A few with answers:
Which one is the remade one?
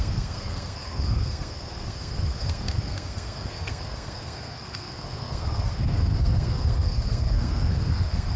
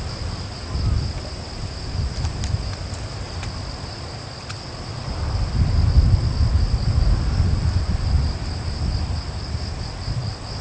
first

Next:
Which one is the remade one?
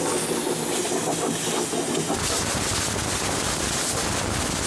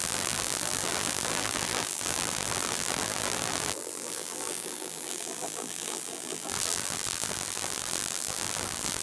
second